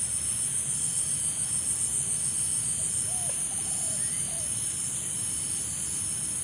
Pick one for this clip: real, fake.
fake